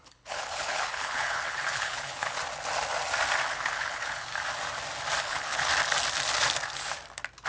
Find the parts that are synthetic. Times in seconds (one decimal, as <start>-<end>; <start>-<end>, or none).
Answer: 0.0-2.4; 3.5-4.3; 5.2-5.7